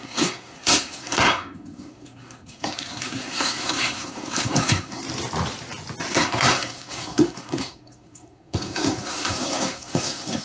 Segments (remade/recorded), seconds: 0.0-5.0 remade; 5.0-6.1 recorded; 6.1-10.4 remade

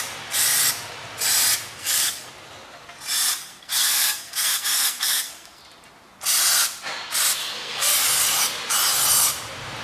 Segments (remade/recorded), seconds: 0.0-1.8 recorded; 1.8-2.3 remade; 2.3-3.4 recorded; 3.4-5.6 remade; 5.6-7.4 recorded; 7.4-7.9 remade; 7.9-9.8 recorded

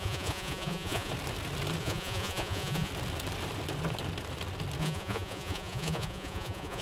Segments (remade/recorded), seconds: 0.0-1.1 remade; 1.1-1.8 recorded; 1.8-2.9 remade; 2.9-4.8 recorded; 4.8-6.8 remade

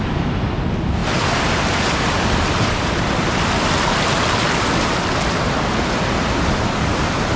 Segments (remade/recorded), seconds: 0.0-7.4 recorded

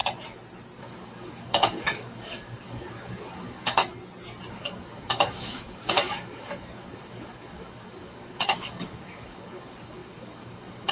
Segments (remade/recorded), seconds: 0.0-0.8 recorded; 0.8-3.8 remade; 3.8-4.5 recorded; 4.5-10.9 remade

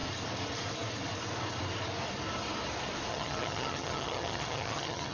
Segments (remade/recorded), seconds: 0.0-3.1 recorded; 3.1-5.1 remade